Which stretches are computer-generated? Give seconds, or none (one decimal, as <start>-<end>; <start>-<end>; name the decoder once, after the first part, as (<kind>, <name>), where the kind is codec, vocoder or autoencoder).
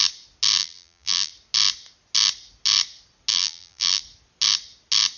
0.6-1.3 (vocoder, BigVGAN v2); 3.3-4.0